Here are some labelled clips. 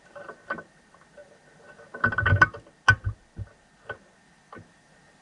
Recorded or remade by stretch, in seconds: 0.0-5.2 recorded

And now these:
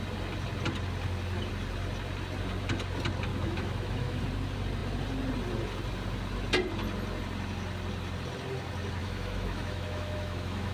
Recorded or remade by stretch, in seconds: 0.0-3.3 recorded; 3.3-4.2 remade; 4.2-9.0 recorded; 9.0-10.7 remade

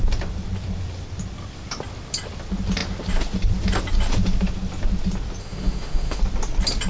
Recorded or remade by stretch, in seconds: 0.0-5.4 recorded; 5.4-6.2 remade; 6.2-6.9 recorded

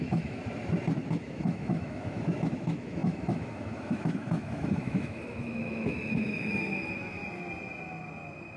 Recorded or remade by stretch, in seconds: 0.0-0.4 remade; 0.4-1.1 recorded; 1.1-7.2 remade; 7.2-8.6 recorded

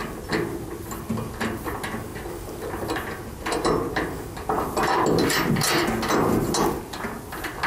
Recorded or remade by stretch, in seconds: 0.0-7.7 recorded

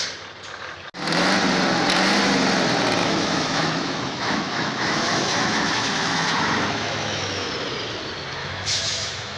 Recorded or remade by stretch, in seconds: 0.0-3.0 recorded; 3.0-7.5 remade; 7.5-8.4 recorded; 8.4-9.4 remade